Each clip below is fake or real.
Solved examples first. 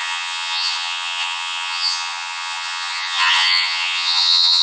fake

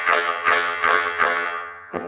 fake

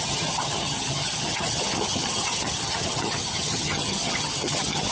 fake